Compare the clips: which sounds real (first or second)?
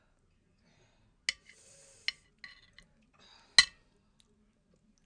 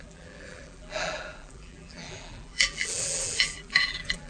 first